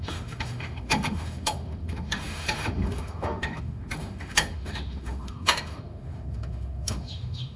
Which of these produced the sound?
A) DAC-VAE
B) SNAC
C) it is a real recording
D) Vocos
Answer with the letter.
A